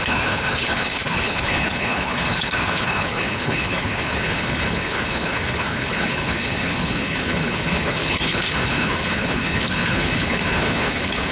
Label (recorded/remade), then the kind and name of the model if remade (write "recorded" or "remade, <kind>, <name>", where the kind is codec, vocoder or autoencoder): remade, codec, HILCodec